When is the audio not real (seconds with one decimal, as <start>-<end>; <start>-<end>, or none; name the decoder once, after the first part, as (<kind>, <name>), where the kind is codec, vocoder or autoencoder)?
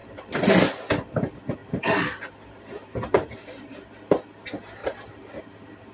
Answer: 1.6-3.7 (vocoder, BigVGAN v2)